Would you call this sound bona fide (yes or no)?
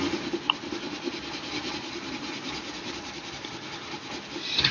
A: yes